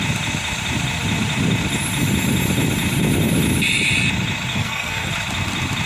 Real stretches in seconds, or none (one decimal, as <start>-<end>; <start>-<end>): 0.0-4.5; 5.1-5.9